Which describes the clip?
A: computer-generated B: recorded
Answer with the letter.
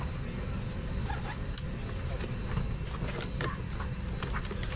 B